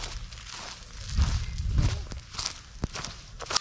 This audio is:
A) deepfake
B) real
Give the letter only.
B